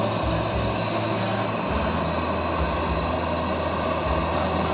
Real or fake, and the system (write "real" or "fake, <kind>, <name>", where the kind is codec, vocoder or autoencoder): real